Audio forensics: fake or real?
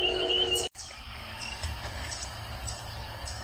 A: fake